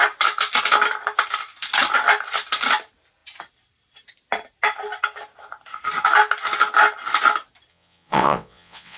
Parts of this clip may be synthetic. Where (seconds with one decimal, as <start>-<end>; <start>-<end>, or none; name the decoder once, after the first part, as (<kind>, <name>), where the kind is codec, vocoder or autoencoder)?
7.7-9.0 (vocoder, WaveNeXt)

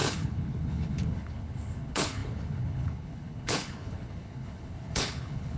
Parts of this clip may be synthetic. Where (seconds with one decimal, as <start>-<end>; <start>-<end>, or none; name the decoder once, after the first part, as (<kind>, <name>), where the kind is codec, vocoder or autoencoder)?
0.0-5.6 (codec, HILCodec)

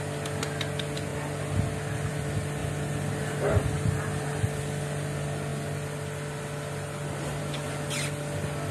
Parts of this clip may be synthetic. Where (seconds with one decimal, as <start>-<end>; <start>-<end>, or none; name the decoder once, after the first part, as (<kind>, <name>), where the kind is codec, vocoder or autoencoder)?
none

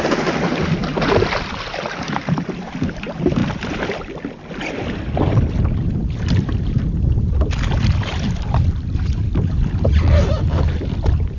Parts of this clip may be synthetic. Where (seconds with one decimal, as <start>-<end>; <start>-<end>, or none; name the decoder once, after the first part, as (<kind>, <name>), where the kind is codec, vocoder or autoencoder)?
none

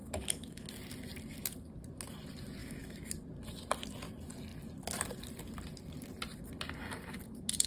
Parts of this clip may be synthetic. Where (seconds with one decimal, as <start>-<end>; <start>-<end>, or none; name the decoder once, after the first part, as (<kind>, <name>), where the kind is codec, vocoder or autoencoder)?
0.0-0.7 (autoencoder, DAC-VAE); 2.6-3.1

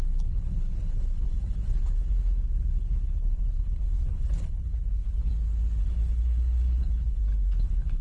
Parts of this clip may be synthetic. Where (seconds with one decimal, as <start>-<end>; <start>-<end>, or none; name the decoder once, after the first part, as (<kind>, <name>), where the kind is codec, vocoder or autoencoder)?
0.0-5.3 (codec, HILCodec); 5.8-8.0

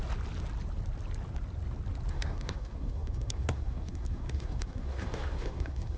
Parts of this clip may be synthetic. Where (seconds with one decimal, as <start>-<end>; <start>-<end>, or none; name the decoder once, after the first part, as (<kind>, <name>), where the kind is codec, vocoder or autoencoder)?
2.1-6.0 (codec, SNAC)

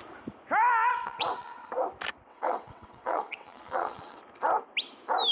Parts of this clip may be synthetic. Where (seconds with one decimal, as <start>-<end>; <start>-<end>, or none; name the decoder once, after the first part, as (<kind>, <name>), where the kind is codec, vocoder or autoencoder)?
0.9-1.7 (vocoder, WaveNeXt); 2.3-4.2